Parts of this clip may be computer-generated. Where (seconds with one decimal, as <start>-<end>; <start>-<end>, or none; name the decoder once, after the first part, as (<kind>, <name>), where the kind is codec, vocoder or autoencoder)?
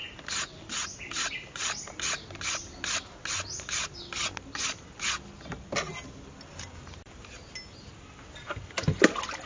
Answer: none